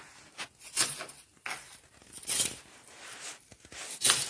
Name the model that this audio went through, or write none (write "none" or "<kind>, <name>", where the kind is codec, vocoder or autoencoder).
none